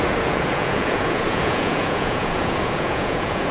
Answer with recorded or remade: remade